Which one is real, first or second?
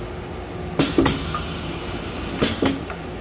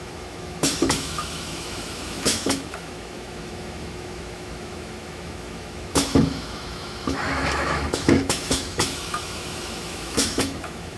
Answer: first